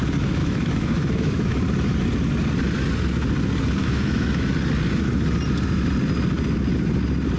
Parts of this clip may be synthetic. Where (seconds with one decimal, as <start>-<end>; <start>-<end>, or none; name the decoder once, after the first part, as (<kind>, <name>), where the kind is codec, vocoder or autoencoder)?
0.4-1.5 (autoencoder, DAC-VAE); 3.8-4.5